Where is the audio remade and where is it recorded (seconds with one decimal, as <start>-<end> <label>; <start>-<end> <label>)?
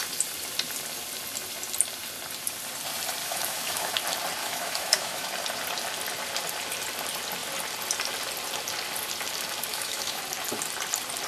0.0-3.2 recorded; 3.2-3.9 remade; 3.9-4.4 recorded; 4.4-5.3 remade; 5.3-9.7 recorded; 9.7-10.2 remade; 10.2-11.3 recorded